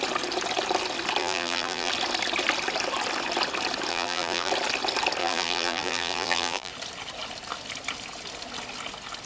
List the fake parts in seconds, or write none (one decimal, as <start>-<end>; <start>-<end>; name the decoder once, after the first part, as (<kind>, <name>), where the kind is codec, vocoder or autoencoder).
1.2-1.9 (vocoder, BigVGAN v2); 3.9-4.5; 5.2-6.7